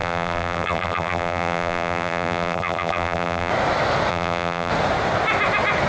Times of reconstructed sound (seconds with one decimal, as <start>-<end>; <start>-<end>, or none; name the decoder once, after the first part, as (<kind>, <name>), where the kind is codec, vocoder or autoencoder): 0.0-3.5 (vocoder, BigVGAN v2); 4.1-4.7